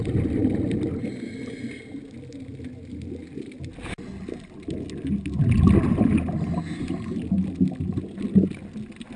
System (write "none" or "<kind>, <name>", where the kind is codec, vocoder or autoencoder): none